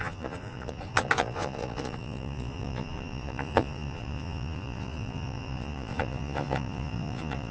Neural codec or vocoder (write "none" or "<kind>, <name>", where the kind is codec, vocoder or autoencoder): vocoder, Vocos